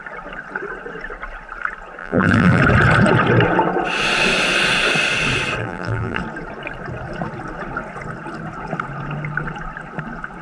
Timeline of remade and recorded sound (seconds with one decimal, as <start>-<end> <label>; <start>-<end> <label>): 0.0-2.0 recorded; 2.0-2.6 remade; 2.6-5.6 recorded; 5.6-6.2 remade; 6.2-10.4 recorded